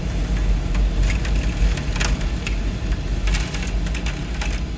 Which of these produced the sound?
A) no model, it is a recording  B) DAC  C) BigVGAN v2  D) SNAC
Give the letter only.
A